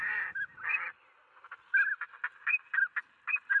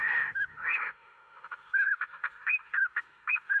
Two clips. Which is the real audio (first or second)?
first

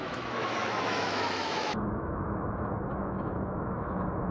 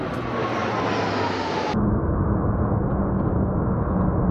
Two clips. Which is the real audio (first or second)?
second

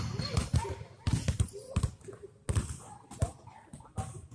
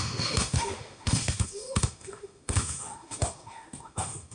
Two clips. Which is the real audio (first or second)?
first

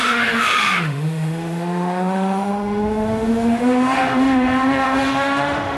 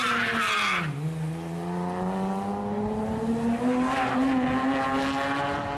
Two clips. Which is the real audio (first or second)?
second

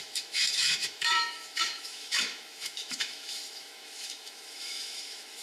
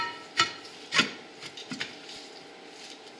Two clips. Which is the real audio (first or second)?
second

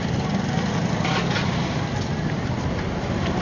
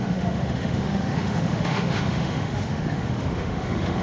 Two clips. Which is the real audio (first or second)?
first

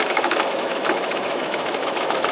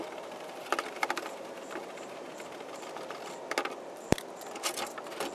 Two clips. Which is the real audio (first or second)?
second